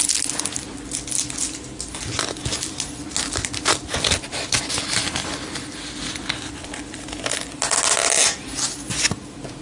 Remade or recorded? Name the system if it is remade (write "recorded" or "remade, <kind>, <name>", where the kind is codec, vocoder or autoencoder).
recorded